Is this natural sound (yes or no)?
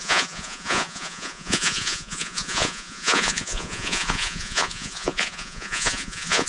no